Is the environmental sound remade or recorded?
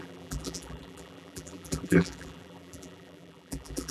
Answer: remade